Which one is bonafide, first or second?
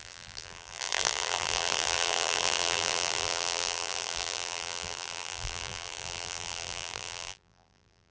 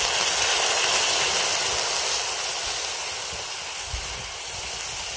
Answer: second